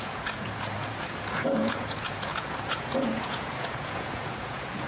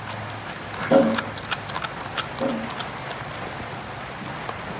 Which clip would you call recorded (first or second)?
second